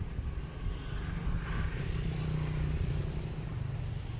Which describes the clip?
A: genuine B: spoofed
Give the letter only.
A